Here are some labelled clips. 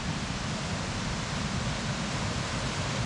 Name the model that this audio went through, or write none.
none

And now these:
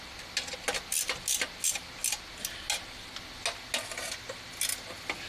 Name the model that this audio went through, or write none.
none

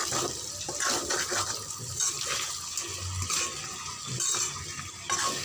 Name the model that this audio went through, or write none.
none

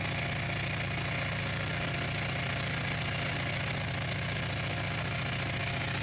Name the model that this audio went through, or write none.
none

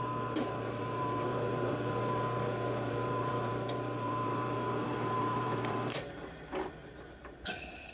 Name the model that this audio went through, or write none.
vocoder, BigVGAN v2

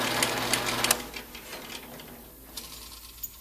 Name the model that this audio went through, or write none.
none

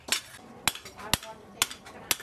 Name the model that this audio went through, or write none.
none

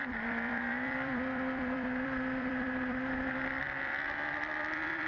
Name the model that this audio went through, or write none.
vocoder, BigVGAN v2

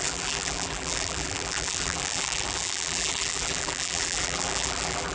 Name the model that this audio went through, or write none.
vocoder, BigVGAN v2